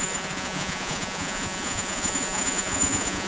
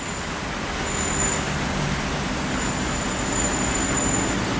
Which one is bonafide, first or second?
second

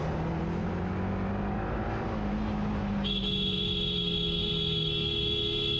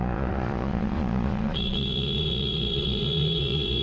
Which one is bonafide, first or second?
first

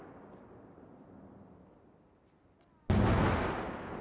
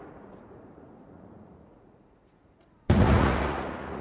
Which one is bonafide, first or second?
first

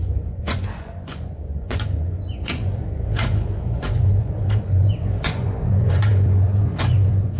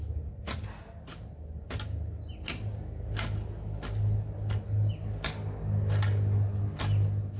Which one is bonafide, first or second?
second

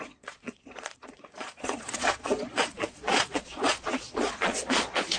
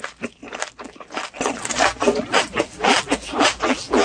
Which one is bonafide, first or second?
second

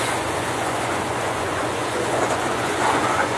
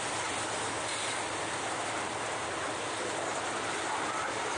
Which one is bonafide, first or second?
second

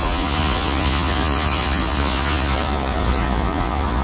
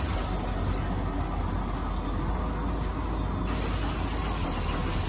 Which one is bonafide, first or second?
second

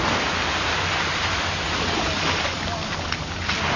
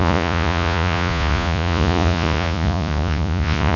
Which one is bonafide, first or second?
first